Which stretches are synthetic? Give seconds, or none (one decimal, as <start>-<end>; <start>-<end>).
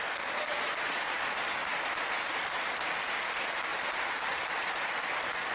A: 3.7-4.5